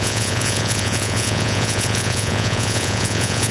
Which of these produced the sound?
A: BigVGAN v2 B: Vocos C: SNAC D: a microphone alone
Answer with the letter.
B